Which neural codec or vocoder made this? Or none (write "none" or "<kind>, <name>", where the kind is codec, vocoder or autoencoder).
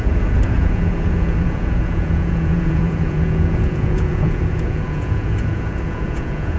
vocoder, Vocos